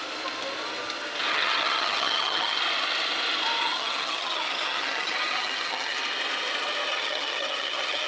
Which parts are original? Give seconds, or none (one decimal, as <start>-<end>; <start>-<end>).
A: 0.0-1.3; 2.6-3.6; 6.0-6.9